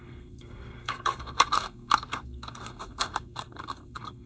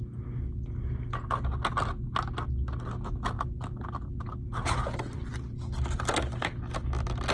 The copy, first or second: first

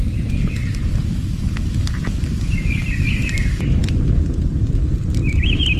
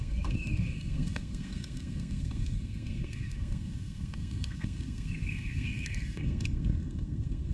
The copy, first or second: second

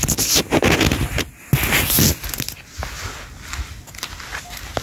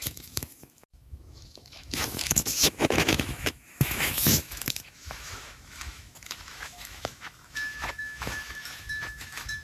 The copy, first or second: second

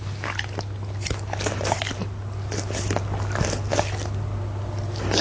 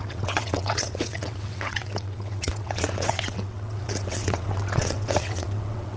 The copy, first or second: second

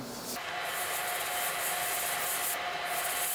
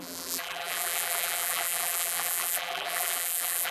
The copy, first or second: second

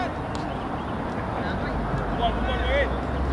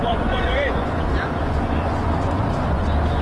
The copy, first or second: second